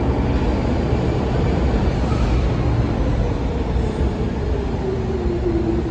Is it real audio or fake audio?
real